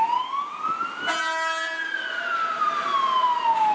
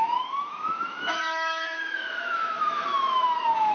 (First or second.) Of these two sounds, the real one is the first